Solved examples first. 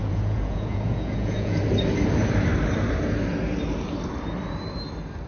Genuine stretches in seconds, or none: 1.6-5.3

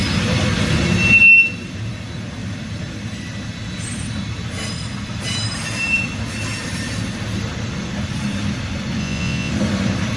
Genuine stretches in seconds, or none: 0.0-9.0; 9.5-10.2